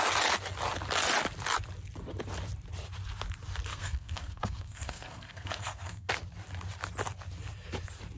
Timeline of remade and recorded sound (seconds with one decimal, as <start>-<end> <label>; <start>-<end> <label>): 0.0-3.7 recorded; 3.7-6.1 remade; 6.1-8.2 recorded